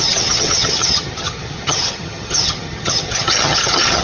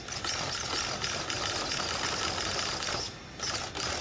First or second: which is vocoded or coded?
first